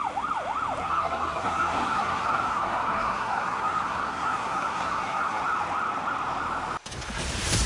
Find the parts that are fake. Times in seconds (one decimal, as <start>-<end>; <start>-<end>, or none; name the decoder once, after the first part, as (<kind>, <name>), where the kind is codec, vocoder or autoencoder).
0.8-5.4 (codec, SNAC)